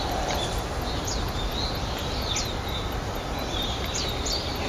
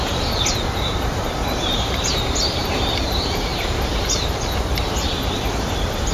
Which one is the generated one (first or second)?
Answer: second